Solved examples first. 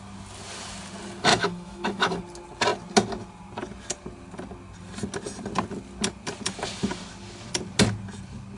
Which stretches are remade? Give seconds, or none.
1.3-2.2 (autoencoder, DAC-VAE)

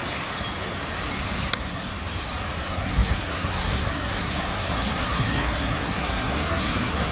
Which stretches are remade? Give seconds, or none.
1.5-1.9 (codec, SNAC); 2.6-7.1

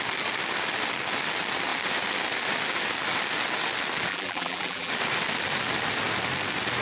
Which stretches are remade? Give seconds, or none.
4.1-4.9 (vocoder, BigVGAN v2)

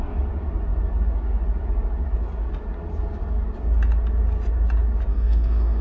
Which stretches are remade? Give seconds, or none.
5.1-5.8 (codec, DAC)

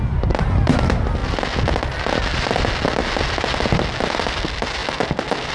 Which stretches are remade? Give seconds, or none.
none

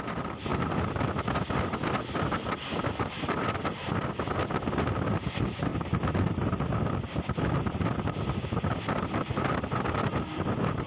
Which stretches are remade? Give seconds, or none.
none